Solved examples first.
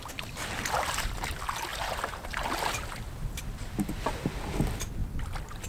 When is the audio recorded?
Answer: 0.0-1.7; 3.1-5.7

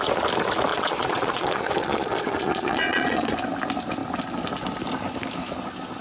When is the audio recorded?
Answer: 0.0-0.7; 3.3-6.0

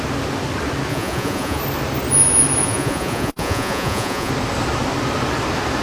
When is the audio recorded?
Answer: 0.0-0.9; 1.6-2.6; 4.3-5.8

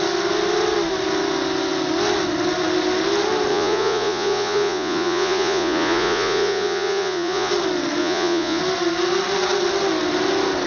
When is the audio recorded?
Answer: 0.0-3.5; 7.5-8.0; 8.6-10.7

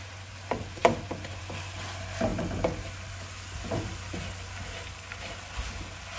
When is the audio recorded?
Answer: 0.0-6.2

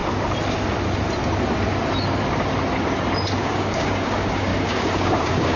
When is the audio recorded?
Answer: 0.0-3.4

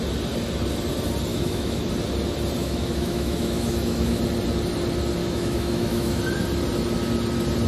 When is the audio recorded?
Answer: 0.0-1.3; 1.9-2.6; 4.2-5.2; 6.2-7.7